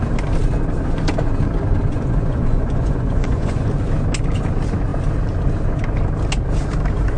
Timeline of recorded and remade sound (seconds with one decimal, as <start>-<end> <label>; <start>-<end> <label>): 0.0-1.9 recorded; 1.9-3.7 remade; 3.7-7.2 recorded